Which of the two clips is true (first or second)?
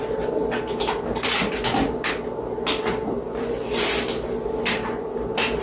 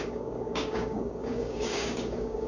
first